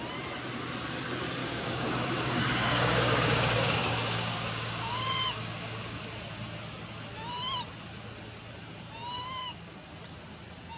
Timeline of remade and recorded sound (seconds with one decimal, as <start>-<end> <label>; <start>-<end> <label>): 0.0-1.4 recorded; 1.4-6.0 remade; 6.0-9.4 recorded; 9.4-9.9 remade; 9.9-10.8 recorded